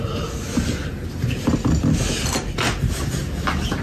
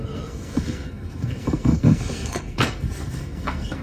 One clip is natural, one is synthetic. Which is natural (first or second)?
first